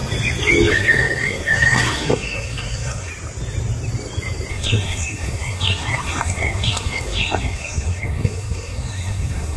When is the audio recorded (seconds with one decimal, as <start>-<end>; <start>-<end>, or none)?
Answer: 0.0-0.7; 3.1-4.5